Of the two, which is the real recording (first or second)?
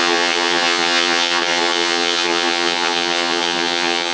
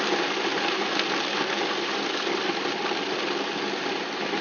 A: second